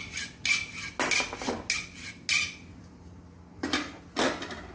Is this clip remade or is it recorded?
recorded